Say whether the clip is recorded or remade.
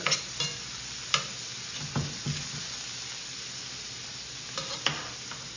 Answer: recorded